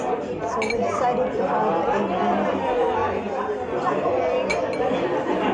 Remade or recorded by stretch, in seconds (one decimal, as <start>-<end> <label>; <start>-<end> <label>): 0.0-5.5 recorded